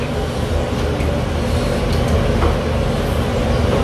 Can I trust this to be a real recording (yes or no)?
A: yes